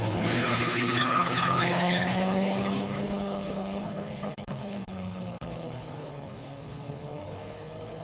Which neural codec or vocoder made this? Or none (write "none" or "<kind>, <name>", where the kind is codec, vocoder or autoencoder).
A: codec, HILCodec